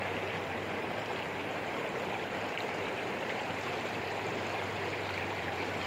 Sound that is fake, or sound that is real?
fake